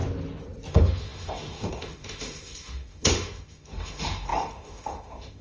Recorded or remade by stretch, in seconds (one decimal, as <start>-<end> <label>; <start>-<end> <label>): 0.0-0.7 recorded; 0.7-5.4 remade